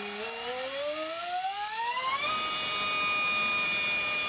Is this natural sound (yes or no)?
yes